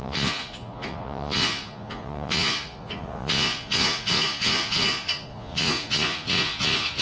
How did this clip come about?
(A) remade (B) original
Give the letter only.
A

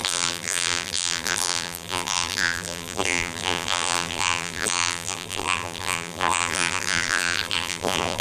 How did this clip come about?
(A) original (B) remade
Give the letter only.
B